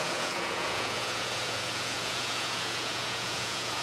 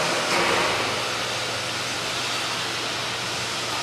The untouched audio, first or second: second